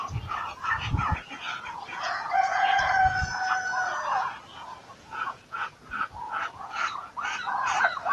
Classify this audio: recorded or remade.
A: remade